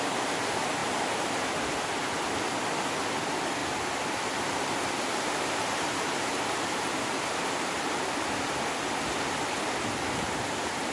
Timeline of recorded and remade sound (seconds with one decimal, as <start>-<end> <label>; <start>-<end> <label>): 0.0-0.8 recorded; 0.8-1.3 remade; 1.3-3.6 recorded; 3.6-8.4 remade; 8.4-10.9 recorded